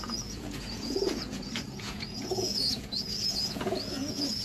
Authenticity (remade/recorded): remade